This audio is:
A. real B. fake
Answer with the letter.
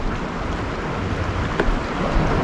A